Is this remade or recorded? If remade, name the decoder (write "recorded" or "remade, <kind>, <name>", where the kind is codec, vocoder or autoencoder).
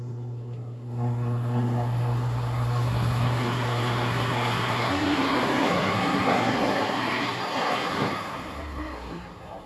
remade, codec, SNAC